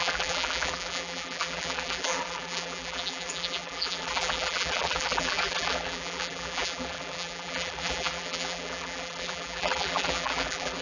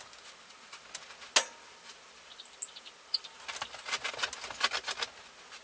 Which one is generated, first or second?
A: first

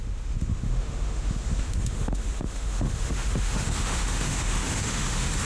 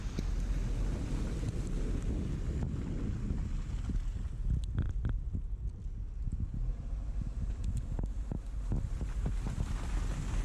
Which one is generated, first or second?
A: first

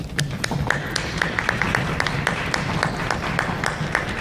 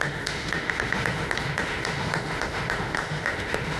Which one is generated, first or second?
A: second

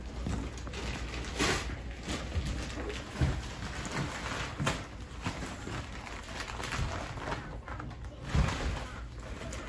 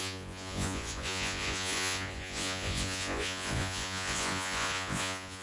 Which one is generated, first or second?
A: second